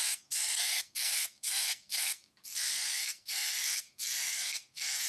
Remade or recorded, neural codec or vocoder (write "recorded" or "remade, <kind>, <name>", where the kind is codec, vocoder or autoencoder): remade, codec, SNAC